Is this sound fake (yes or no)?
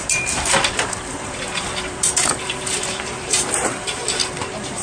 yes